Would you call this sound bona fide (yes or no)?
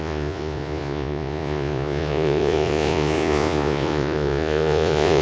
no